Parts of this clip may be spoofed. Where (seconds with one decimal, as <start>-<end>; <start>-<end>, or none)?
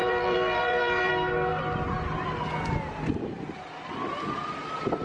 0.0-1.1